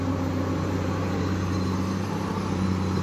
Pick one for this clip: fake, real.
fake